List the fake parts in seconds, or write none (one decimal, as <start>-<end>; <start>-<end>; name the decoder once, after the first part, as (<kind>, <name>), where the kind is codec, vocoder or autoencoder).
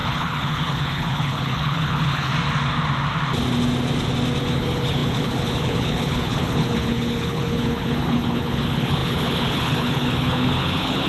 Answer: 0.0-2.3 (codec, HILCodec); 4.4-11.1